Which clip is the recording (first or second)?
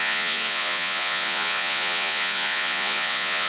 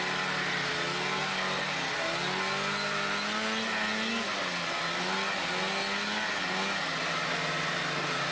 second